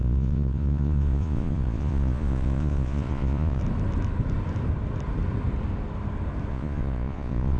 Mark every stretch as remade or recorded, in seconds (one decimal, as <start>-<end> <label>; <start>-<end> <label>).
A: 0.0-3.6 remade; 3.6-6.5 recorded; 6.5-7.6 remade